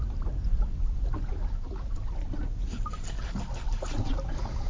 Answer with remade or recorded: recorded